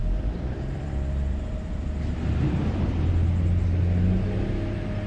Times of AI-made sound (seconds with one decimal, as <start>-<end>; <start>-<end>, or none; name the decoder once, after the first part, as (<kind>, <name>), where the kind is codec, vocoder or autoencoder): 0.0-3.1 (vocoder, BigVGAN v2)